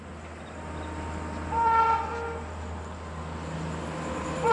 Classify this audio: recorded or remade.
recorded